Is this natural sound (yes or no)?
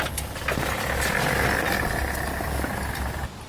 yes